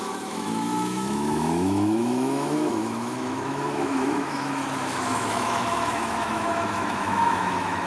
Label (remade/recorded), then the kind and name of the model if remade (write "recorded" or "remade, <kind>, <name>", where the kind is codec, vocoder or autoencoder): remade, autoencoder, DAC-VAE